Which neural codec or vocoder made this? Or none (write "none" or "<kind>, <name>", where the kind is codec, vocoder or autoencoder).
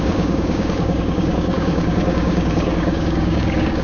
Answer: codec, DAC